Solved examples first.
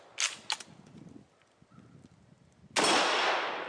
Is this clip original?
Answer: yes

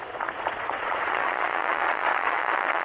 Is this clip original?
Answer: no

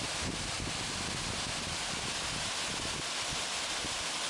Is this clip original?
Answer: yes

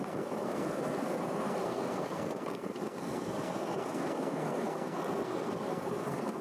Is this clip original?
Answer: no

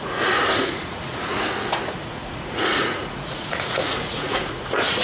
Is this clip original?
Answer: no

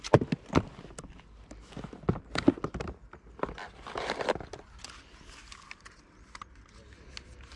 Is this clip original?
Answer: yes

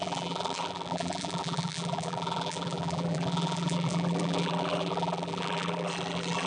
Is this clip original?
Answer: no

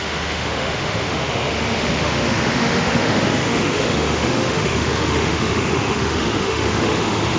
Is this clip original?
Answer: no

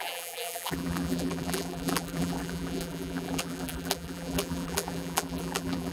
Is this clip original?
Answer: no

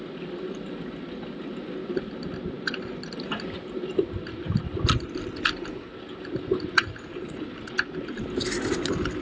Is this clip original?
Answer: yes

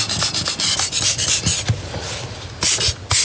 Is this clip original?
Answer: yes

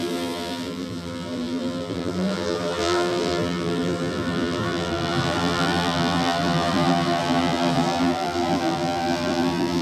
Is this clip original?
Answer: no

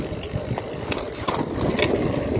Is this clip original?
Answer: yes